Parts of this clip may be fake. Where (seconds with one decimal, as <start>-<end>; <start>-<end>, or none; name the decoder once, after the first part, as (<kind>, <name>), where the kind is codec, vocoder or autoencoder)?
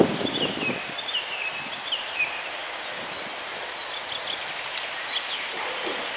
none